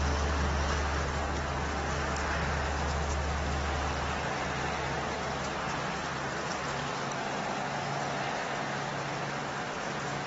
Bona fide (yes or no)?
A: yes